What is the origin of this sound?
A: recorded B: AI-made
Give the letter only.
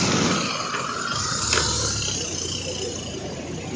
A